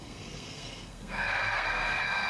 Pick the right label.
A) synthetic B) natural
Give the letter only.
A